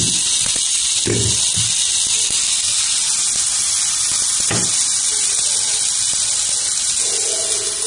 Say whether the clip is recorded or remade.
recorded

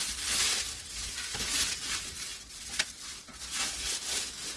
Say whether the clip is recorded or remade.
recorded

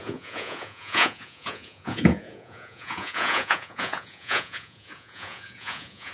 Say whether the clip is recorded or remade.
remade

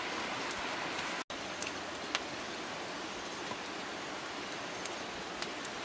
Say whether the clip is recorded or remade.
recorded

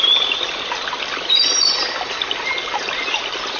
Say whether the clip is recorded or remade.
recorded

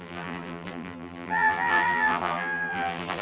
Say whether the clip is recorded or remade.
remade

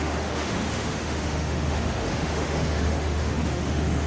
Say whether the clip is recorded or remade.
remade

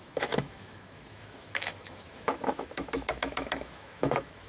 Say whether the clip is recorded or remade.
remade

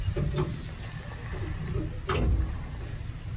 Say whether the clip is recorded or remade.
recorded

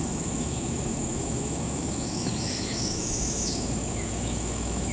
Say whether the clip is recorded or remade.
remade